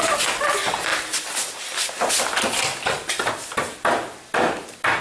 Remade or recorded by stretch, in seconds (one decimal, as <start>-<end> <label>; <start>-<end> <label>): 0.0-0.9 recorded; 0.9-3.9 remade; 3.9-5.0 recorded